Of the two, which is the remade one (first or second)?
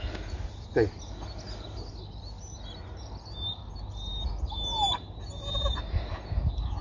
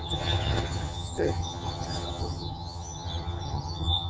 second